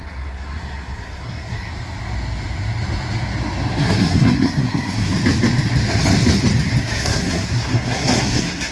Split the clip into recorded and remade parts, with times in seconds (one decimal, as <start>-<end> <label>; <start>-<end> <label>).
0.0-1.7 remade; 1.7-3.8 recorded; 3.8-5.1 remade; 5.1-6.8 recorded; 6.8-8.7 remade

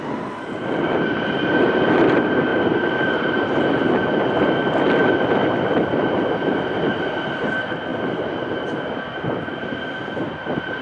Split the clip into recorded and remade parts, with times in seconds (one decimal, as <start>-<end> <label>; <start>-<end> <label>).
0.0-10.8 recorded

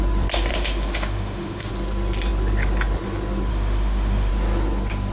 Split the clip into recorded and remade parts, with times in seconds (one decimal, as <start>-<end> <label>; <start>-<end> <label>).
0.0-0.5 recorded; 0.5-1.7 remade; 1.7-3.5 recorded; 3.5-4.3 remade; 4.3-5.1 recorded

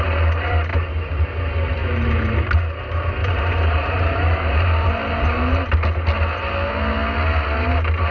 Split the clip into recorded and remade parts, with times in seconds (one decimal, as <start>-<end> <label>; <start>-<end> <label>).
0.0-3.2 recorded; 3.2-5.4 remade; 5.4-8.1 recorded